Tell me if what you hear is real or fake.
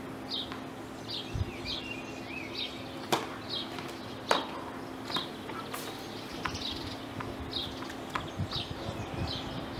real